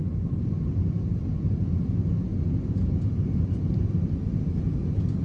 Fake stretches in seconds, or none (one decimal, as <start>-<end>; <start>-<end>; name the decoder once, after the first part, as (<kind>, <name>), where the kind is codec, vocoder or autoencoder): 0.0-2.3 (vocoder, BigVGAN v2); 3.9-5.2